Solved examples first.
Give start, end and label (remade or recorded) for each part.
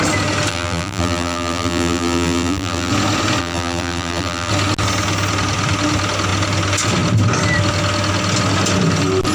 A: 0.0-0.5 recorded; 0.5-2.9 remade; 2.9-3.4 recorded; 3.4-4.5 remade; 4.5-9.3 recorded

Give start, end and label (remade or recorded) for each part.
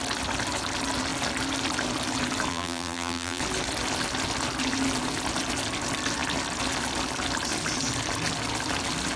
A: 0.0-2.5 recorded; 2.5-3.4 remade; 3.4-9.2 recorded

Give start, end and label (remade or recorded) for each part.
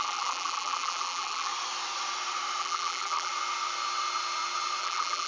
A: 0.0-1.5 remade; 1.5-2.6 recorded; 2.6-3.3 remade; 3.3-4.8 recorded; 4.8-5.3 remade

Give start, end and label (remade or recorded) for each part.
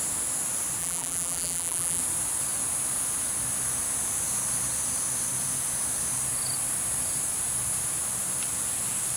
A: 0.0-0.8 recorded; 0.8-2.0 remade; 2.0-9.2 recorded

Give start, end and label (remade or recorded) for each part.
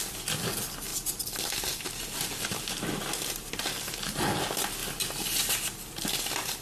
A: 0.0-0.9 recorded; 0.9-3.6 remade; 3.6-6.6 recorded